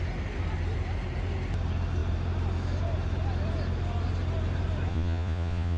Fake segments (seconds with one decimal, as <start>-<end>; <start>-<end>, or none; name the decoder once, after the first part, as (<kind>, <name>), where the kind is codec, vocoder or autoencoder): 4.9-5.8 (vocoder, Vocos)